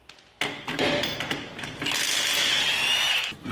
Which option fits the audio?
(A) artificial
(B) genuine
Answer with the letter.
B